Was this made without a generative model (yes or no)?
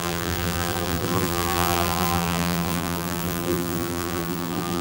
no